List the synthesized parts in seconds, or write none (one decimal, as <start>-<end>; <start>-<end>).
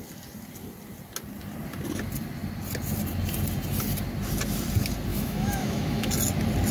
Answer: 5.1-6.1